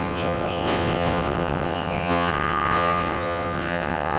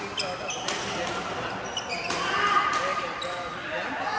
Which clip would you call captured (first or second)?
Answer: second